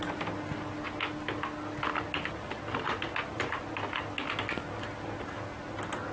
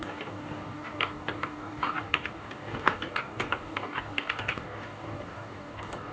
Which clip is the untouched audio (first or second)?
first